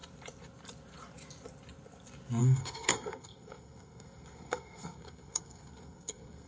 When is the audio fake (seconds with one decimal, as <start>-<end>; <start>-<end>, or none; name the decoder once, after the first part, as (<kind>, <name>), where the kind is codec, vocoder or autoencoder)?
2.4-6.5 (codec, SNAC)